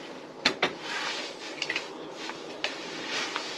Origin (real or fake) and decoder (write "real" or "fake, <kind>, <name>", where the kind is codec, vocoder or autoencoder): real